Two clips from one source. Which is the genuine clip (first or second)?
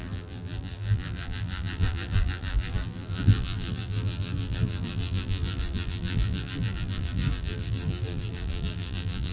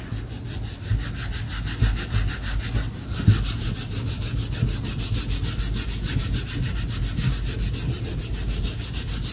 second